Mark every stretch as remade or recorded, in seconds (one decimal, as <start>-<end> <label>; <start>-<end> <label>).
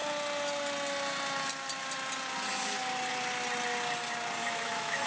0.0-4.4 recorded; 4.4-5.1 remade